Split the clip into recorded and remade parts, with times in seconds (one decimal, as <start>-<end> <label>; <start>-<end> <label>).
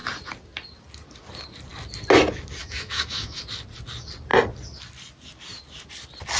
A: 0.0-2.6 recorded; 2.6-3.4 remade; 3.4-6.4 recorded